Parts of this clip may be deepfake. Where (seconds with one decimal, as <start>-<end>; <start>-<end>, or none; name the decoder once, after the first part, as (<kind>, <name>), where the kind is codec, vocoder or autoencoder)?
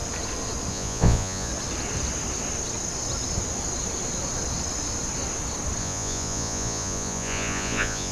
0.7-1.5 (vocoder, Vocos); 5.8-8.1